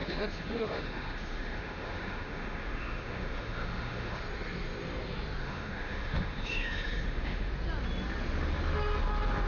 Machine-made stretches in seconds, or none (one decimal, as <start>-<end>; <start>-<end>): 0.0-4.2; 5.4-7.5